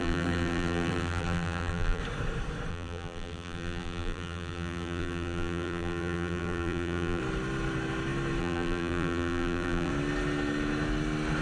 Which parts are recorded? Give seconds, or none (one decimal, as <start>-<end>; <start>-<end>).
2.0-2.7; 7.2-8.4; 9.9-11.4